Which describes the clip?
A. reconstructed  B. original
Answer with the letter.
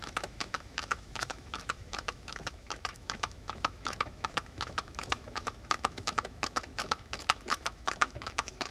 A